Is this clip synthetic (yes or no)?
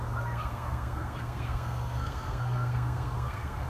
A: yes